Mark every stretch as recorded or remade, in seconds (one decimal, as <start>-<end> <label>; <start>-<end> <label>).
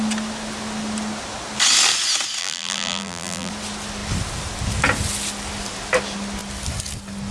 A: 0.0-2.4 recorded; 2.4-3.5 remade; 3.5-7.3 recorded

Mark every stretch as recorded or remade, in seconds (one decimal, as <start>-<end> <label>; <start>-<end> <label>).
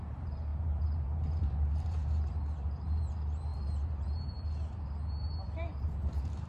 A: 0.0-6.5 remade